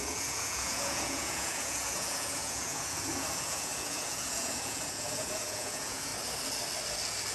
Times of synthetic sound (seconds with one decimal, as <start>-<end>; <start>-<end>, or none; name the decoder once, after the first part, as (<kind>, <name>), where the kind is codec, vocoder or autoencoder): 0.0-6.1 (vocoder, Vocos)